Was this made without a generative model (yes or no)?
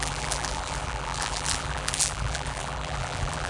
no